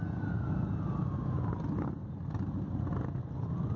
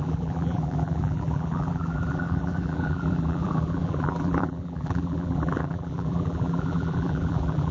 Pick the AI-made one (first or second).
second